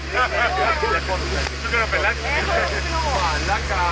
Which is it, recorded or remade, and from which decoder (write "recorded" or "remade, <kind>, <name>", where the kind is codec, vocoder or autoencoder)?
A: recorded